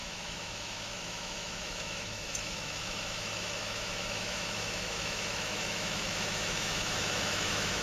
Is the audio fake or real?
fake